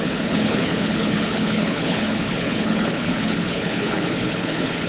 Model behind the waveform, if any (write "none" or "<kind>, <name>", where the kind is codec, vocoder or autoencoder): codec, HILCodec